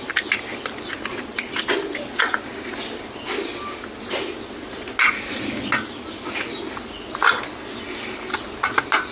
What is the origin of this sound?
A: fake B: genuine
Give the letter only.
B